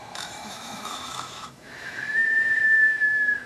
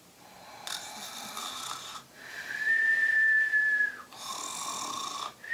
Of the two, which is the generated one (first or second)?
first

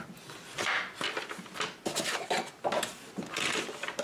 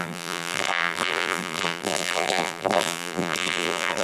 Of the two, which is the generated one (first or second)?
second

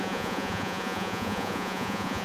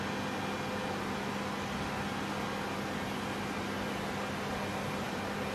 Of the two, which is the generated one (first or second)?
first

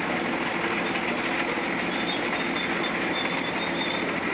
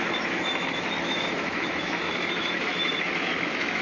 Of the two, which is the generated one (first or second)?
second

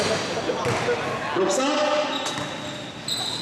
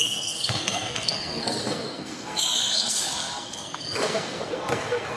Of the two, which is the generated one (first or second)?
second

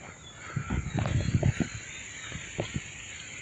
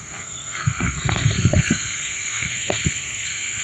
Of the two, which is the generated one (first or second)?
second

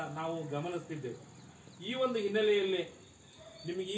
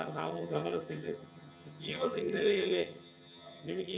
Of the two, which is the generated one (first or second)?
second